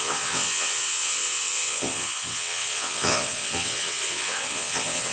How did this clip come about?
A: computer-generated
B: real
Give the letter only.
A